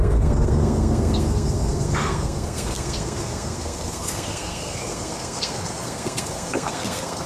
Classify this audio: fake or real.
fake